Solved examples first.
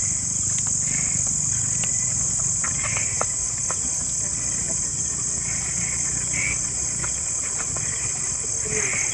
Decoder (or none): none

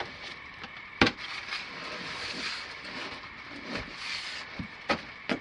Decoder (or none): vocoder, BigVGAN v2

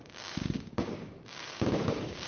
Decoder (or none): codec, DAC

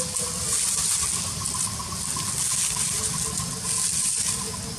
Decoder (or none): none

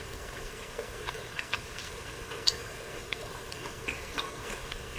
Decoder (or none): codec, SNAC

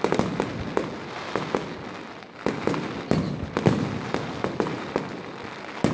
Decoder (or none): none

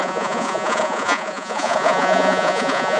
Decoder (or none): vocoder, Vocos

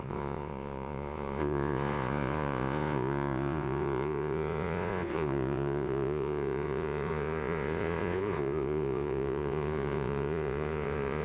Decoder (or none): vocoder, Vocos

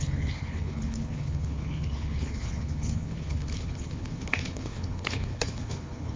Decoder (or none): codec, HILCodec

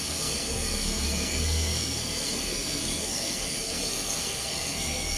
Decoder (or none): codec, SNAC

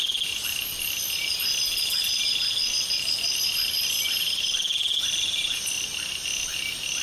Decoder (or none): none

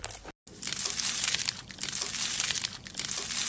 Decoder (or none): none